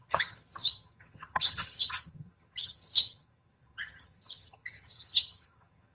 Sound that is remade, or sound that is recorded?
remade